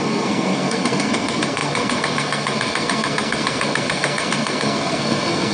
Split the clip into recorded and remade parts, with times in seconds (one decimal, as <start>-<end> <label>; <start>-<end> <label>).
0.0-5.5 remade